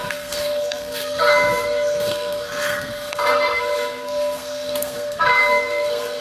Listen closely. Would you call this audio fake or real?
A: fake